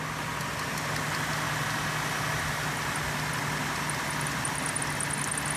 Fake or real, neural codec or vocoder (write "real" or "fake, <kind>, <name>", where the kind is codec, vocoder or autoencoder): real